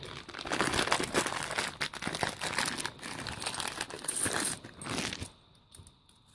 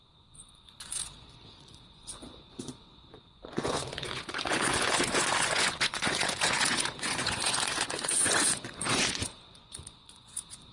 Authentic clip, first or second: first